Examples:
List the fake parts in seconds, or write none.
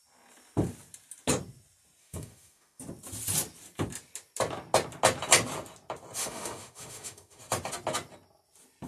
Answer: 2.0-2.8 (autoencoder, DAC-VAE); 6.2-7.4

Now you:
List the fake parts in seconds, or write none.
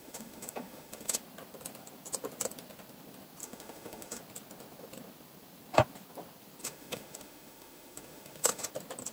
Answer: 0.0-1.2 (autoencoder, DAC-VAE); 3.4-4.2; 6.6-8.7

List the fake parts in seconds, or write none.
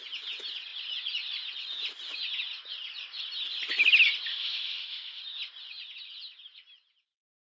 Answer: 4.3-5.2 (autoencoder, DAC-VAE)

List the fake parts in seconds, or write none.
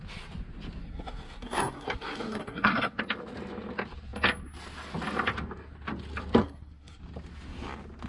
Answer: 0.8-3.0 (codec, SNAC); 6.4-7.0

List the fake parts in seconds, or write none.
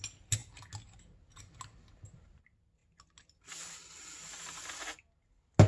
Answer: none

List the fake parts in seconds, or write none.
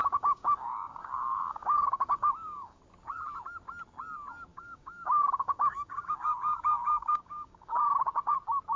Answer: 0.0-2.8 (codec, DAC); 4.5-7.8